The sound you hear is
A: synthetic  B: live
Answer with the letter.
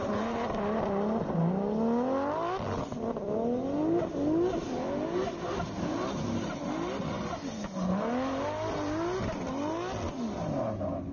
B